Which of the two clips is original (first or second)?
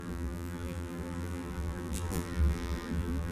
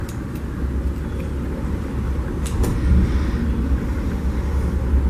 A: second